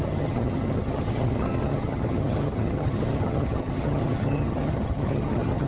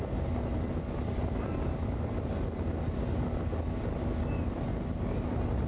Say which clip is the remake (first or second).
first